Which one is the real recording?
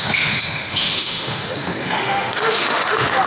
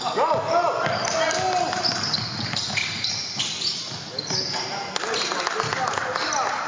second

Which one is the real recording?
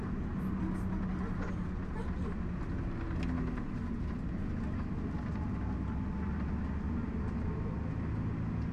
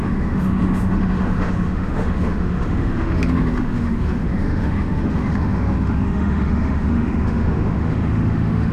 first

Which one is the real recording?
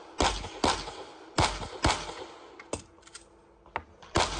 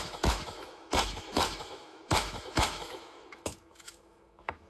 first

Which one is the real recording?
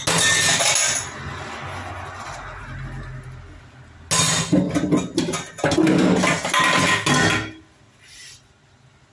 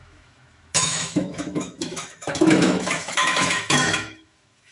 first